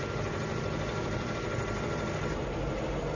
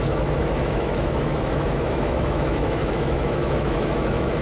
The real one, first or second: first